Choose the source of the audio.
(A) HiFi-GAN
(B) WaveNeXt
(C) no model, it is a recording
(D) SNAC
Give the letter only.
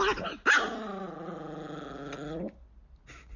C